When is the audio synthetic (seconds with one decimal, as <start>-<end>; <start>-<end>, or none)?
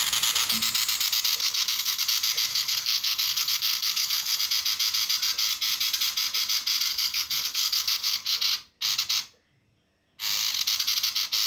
1.4-2.0; 2.5-4.4; 6.9-8.4